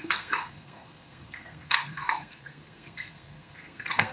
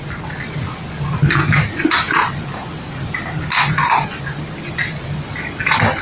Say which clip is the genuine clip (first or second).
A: second